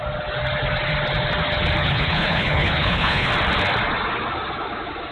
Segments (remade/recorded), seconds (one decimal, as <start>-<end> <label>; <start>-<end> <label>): 0.0-1.8 recorded; 1.8-3.3 remade; 3.3-5.1 recorded